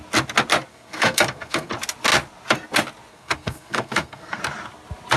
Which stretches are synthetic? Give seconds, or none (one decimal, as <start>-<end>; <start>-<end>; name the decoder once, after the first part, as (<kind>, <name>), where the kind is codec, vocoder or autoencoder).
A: 0.7-1.7 (codec, SNAC); 3.1-4.4